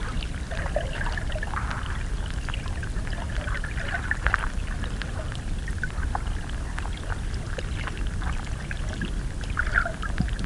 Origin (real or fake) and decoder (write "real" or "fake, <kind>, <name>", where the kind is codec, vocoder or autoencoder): real